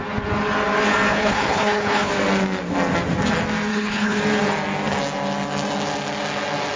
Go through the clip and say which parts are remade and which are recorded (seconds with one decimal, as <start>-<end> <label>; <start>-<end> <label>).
0.0-1.1 recorded; 1.1-2.1 remade; 2.1-3.7 recorded; 3.7-4.2 remade; 4.2-6.8 recorded